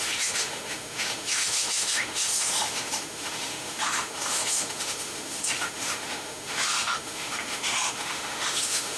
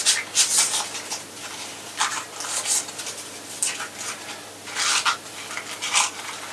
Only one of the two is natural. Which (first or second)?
second